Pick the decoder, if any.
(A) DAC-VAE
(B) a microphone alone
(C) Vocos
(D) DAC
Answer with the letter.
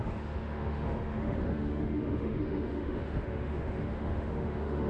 A